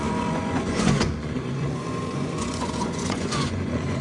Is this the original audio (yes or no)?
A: no